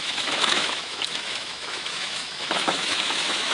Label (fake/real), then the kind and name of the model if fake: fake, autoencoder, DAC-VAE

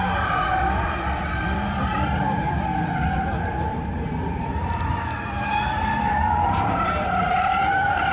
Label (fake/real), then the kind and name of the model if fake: fake, vocoder, BigVGAN v2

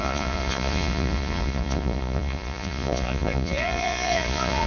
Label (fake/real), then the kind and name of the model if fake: fake, vocoder, Vocos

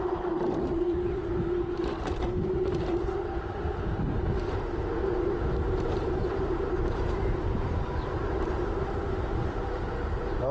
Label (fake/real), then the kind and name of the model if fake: fake, vocoder, BigVGAN v2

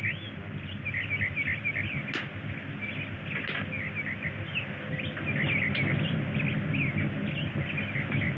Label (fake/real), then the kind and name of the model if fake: real